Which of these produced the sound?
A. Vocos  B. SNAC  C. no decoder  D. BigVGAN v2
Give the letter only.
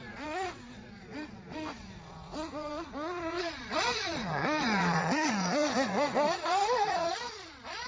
A